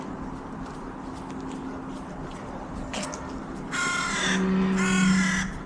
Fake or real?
real